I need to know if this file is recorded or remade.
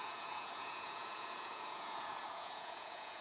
remade